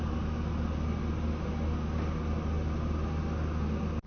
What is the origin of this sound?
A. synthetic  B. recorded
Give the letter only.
B